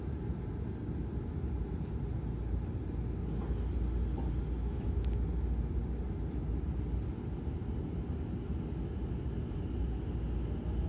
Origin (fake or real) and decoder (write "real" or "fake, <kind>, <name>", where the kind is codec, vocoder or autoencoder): real